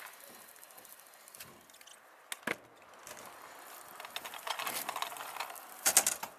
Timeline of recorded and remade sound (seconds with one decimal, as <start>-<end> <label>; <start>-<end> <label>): 0.0-6.4 recorded